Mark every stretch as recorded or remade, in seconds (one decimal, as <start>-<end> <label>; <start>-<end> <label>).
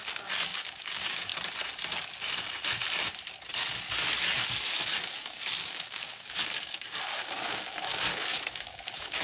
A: 0.0-1.3 remade; 1.3-4.7 recorded; 4.7-9.2 remade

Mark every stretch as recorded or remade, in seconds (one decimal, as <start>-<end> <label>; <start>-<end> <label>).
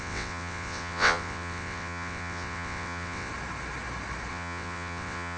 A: 0.0-3.3 remade; 3.3-4.3 recorded; 4.3-5.4 remade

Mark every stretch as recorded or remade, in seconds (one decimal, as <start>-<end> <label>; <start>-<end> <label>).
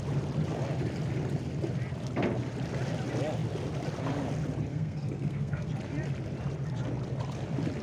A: 0.0-4.7 recorded; 4.7-5.7 remade; 5.7-7.8 recorded